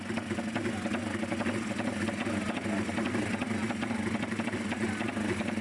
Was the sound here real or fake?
real